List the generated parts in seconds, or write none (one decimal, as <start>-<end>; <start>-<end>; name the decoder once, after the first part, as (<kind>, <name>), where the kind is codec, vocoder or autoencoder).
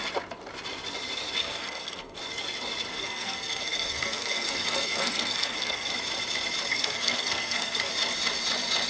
1.4-2.2 (codec, SNAC); 2.9-5.9; 6.7-7.9